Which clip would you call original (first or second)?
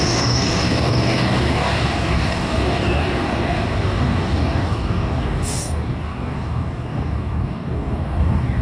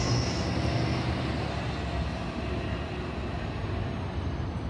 second